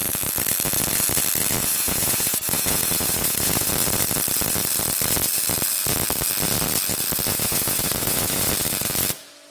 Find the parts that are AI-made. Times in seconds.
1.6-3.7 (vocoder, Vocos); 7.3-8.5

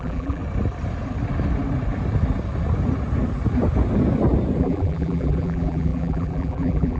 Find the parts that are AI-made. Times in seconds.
0.0-0.4 (vocoder, BigVGAN v2); 4.6-7.0